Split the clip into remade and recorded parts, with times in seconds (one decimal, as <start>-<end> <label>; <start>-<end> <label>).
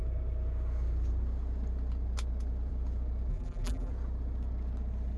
0.0-3.3 recorded; 3.3-3.9 remade; 3.9-5.2 recorded